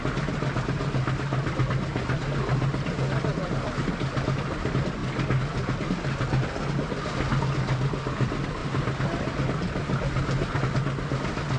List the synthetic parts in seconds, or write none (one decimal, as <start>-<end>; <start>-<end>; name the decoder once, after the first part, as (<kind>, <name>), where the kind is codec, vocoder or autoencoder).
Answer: 8.6-10.6 (vocoder, BigVGAN v2)